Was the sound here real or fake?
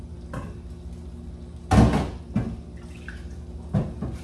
real